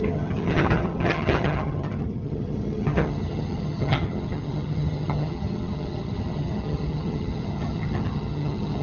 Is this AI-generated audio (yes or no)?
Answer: yes